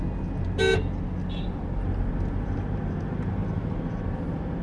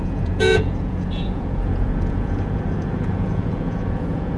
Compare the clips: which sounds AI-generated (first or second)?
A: second